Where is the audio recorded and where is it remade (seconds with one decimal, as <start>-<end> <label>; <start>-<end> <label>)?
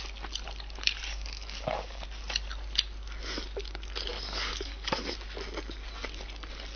0.0-1.1 recorded; 1.1-2.0 remade; 2.0-4.1 recorded; 4.1-5.1 remade; 5.1-6.8 recorded